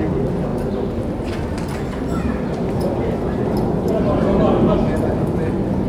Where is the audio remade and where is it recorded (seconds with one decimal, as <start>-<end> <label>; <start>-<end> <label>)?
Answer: 0.0-5.9 recorded